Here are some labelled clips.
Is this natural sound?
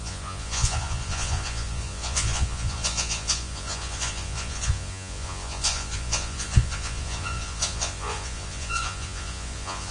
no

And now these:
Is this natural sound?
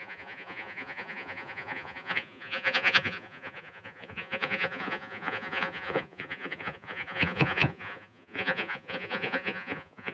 no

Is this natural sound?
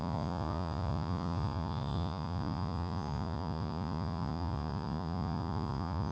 no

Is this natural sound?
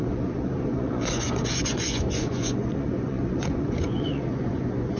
no